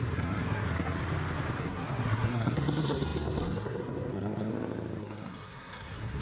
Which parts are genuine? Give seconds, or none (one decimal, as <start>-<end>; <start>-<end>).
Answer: 1.0-1.6; 4.5-5.0

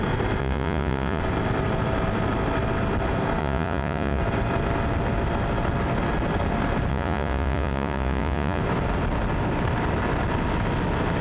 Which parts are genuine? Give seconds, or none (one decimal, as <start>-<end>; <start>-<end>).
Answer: 0.0-0.4; 1.2-3.4; 4.2-6.9; 8.6-11.2

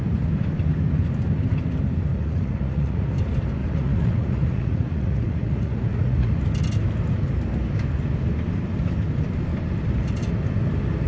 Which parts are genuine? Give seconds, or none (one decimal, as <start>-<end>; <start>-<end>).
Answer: 0.0-2.1; 3.1-3.6; 6.3-11.1

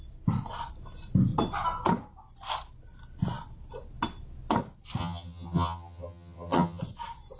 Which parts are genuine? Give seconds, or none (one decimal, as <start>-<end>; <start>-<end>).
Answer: 0.0-5.0; 6.8-7.4

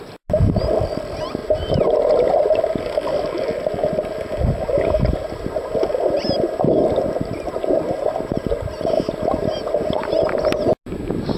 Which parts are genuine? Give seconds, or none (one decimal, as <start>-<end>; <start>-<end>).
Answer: 0.0-11.4

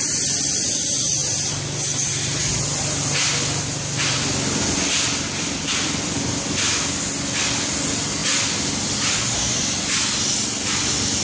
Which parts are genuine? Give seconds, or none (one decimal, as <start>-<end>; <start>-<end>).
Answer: 0.0-11.2

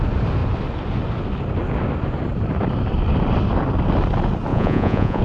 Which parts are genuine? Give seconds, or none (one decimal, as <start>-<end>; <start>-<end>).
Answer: 0.0-4.5

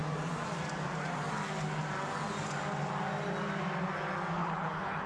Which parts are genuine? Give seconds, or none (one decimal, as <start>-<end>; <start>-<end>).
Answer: 0.0-4.4